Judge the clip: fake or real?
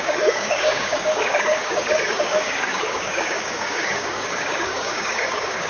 fake